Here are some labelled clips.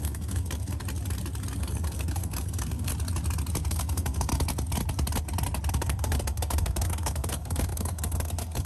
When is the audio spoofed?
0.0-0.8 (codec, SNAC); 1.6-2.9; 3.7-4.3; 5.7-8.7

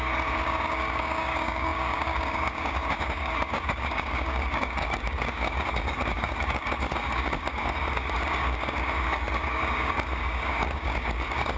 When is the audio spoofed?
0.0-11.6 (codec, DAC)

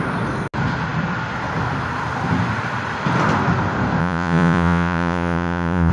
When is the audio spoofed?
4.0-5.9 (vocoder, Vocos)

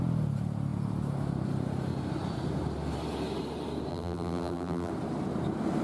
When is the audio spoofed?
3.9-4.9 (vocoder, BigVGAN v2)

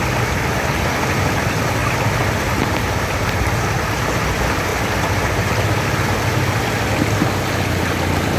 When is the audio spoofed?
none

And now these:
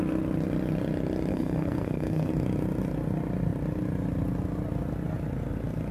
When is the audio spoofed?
1.3-2.3 (codec, SNAC)

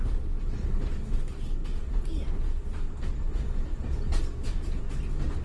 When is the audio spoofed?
none